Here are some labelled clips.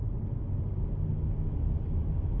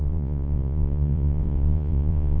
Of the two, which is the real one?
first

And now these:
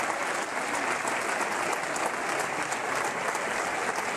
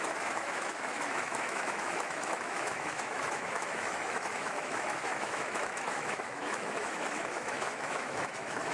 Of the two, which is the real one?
first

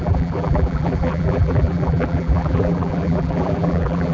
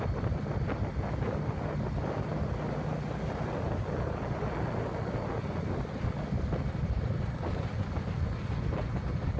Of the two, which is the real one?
second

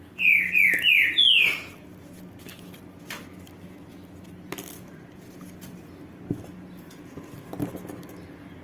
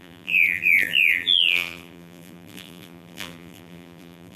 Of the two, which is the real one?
first